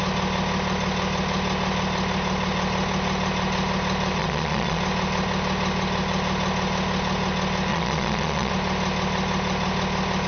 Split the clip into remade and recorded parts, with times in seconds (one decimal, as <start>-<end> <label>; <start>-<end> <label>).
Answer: 0.0-4.2 recorded; 4.2-4.8 remade; 4.8-7.7 recorded; 7.7-8.5 remade; 8.5-10.3 recorded